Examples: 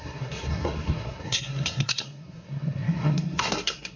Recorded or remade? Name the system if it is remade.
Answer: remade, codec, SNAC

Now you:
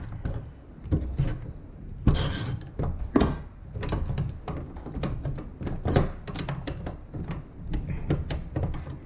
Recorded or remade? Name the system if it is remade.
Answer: recorded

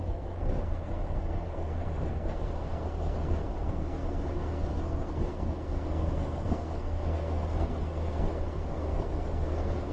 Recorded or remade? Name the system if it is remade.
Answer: remade, codec, SNAC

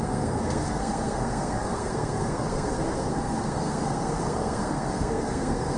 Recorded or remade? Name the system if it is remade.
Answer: remade, codec, SNAC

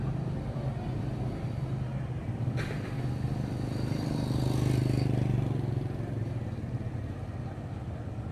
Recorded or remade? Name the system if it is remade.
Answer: recorded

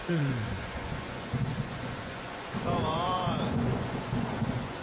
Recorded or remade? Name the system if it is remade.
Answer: remade, vocoder, Vocos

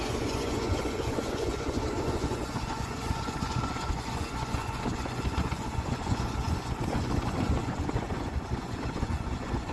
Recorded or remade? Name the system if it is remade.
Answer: remade, vocoder, Vocos